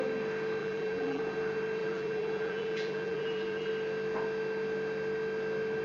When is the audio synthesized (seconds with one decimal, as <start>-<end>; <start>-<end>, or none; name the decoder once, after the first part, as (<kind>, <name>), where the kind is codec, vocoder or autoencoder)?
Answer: 0.6-1.2 (vocoder, BigVGAN v2); 1.8-3.7

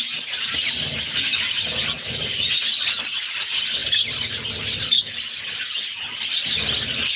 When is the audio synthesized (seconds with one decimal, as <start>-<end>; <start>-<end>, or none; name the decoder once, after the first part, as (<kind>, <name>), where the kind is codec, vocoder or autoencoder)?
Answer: none

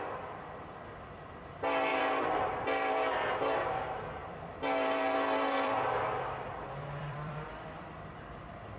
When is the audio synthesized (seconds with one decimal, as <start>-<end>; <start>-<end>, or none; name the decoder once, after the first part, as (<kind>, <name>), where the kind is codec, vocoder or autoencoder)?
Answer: 1.9-3.1 (vocoder, BigVGAN v2); 4.2-8.2

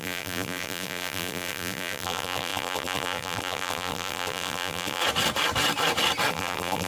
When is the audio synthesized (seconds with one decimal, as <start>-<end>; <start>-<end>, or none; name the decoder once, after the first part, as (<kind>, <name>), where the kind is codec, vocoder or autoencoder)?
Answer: 0.0-5.0 (vocoder, BigVGAN v2); 6.3-6.9

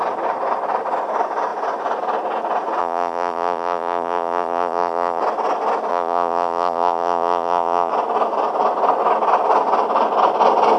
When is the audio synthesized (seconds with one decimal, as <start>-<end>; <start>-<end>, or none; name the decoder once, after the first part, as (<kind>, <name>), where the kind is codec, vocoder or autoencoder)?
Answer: 2.8-5.2 (vocoder, BigVGAN v2); 5.9-7.9